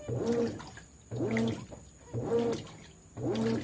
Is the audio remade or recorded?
recorded